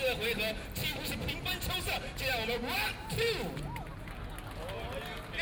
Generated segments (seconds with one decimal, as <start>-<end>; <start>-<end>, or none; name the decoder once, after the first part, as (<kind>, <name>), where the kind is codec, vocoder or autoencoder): none